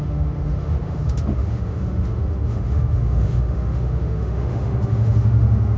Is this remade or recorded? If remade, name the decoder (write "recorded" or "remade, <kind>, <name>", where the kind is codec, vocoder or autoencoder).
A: remade, autoencoder, DAC-VAE